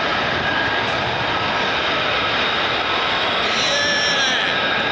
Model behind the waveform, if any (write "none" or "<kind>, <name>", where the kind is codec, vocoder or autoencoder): none